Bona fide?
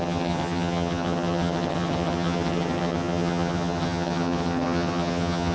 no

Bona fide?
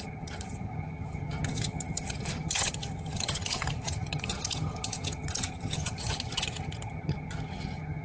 no